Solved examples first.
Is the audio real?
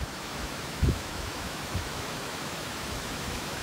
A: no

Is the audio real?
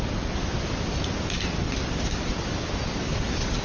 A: yes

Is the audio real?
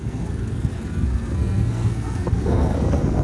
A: no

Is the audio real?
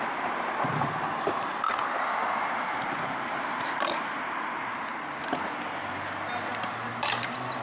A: yes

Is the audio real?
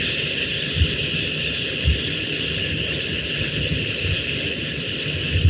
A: yes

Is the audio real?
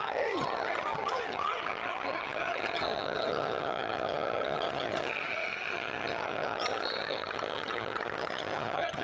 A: no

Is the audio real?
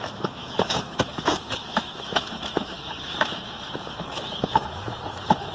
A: no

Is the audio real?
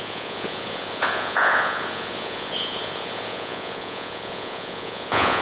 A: no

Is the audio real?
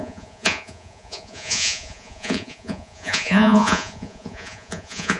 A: no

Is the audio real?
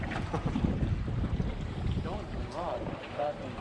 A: no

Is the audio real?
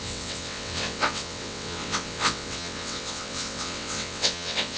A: no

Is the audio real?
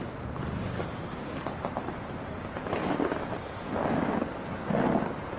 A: yes